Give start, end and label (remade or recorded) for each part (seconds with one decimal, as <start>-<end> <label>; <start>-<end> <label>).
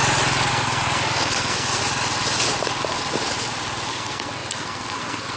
0.0-0.5 recorded; 0.5-1.8 remade; 1.8-3.9 recorded; 3.9-5.4 remade